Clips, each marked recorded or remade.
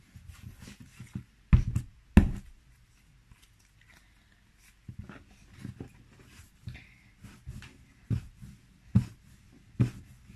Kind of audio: recorded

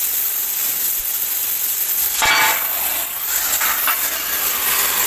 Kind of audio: recorded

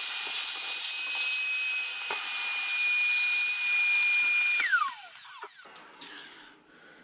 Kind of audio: recorded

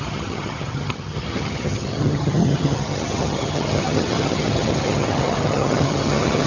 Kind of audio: remade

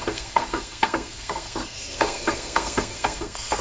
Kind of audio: remade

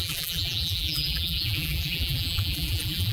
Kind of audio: remade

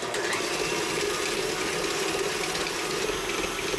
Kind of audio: recorded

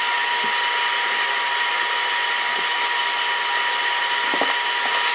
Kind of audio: recorded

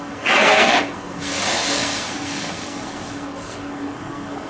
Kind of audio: remade